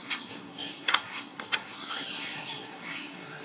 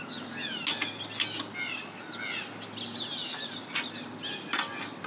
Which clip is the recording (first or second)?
second